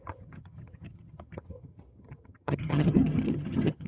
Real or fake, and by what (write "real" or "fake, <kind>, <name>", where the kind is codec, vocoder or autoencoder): fake, vocoder, HiFi-GAN